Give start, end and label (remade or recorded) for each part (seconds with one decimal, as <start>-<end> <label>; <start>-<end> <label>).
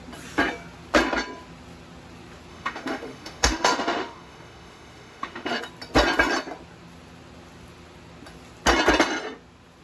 0.0-2.5 recorded; 2.5-5.6 remade; 5.6-9.8 recorded